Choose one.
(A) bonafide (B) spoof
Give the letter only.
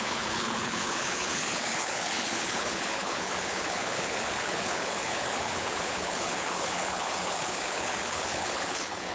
B